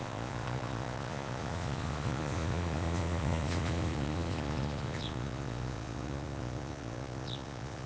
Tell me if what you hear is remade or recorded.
remade